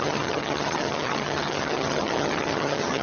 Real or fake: fake